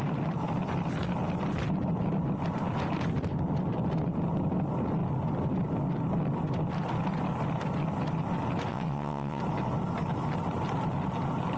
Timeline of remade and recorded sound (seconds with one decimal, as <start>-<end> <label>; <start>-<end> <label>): 0.0-8.7 recorded; 8.7-9.4 remade; 9.4-11.6 recorded